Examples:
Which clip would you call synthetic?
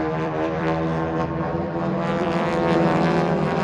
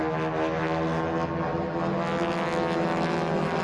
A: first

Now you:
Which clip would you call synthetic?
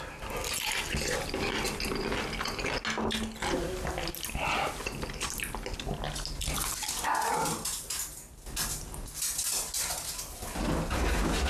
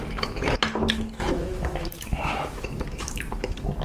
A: second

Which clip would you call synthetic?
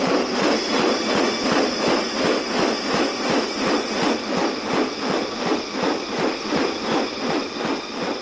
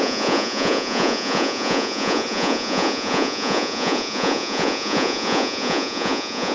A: second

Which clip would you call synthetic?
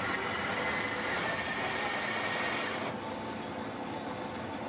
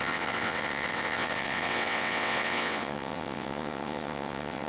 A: second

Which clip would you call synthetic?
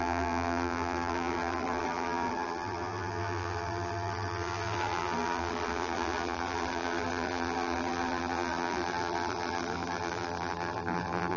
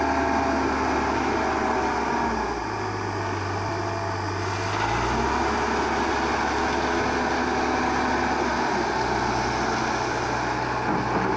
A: first